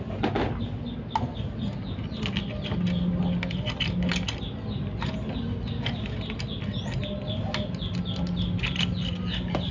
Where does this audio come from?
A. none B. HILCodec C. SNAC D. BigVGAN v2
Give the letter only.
A